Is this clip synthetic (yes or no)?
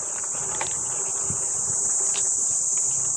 no